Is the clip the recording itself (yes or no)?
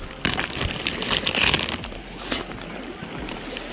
yes